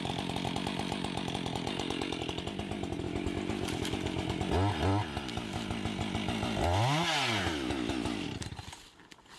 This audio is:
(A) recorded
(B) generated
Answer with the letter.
A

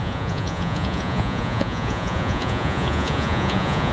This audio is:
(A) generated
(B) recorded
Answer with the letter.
A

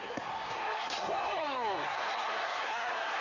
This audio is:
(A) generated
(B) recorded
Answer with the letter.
A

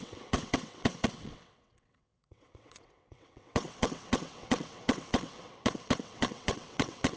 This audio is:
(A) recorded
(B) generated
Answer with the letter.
B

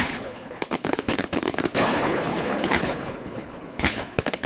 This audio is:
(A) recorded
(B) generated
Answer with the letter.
B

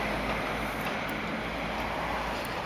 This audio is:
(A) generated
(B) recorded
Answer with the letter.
B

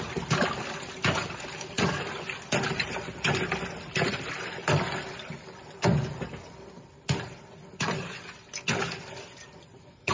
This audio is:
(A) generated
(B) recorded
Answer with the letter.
B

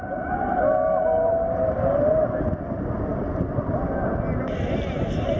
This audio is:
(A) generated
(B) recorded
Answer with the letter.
B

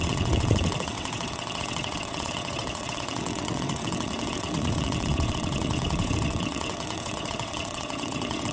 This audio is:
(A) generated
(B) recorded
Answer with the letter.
A